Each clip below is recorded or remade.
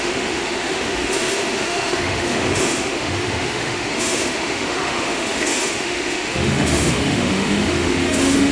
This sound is remade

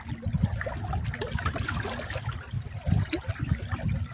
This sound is recorded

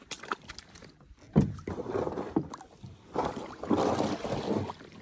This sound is recorded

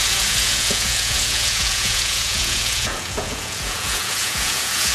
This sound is remade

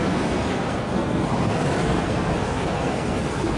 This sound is remade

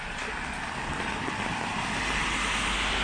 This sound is recorded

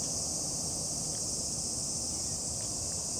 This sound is recorded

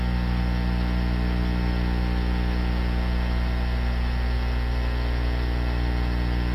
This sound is recorded